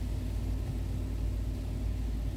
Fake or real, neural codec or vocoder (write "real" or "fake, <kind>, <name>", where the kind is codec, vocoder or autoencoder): real